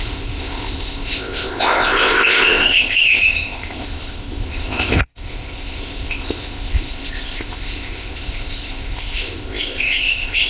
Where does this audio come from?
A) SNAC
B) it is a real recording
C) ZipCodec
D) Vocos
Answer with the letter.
C